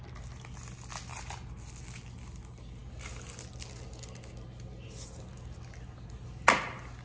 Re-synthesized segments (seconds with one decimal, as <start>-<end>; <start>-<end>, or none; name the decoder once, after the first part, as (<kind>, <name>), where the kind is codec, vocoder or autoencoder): none